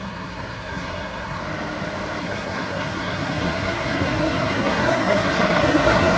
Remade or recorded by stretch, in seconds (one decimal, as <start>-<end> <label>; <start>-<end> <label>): 0.0-1.4 remade; 1.4-2.2 recorded; 2.2-6.2 remade